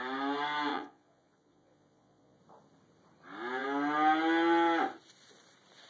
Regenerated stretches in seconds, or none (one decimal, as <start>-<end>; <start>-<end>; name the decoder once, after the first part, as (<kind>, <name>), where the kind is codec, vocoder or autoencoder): 0.7-2.4 (vocoder, Vocos)